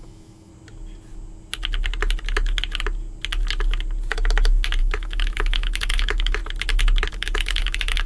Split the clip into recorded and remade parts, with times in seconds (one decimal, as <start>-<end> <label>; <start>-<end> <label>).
0.0-0.5 remade; 0.5-4.8 recorded; 4.8-6.4 remade; 6.4-7.1 recorded; 7.1-8.1 remade